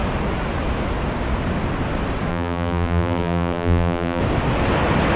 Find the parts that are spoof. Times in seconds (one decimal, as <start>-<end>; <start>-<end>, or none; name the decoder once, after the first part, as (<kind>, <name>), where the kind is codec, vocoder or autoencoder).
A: 2.3-4.2 (vocoder, BigVGAN v2)